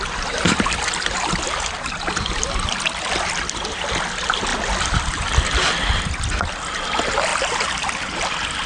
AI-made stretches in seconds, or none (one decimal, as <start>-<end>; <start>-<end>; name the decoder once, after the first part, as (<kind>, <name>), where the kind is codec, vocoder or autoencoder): none